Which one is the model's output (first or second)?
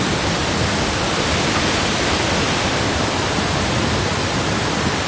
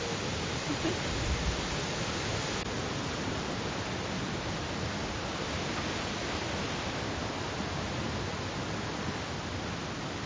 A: first